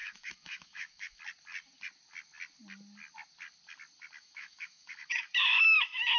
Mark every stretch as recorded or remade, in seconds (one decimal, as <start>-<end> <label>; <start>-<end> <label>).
0.0-1.2 remade; 1.2-4.2 recorded; 4.2-6.2 remade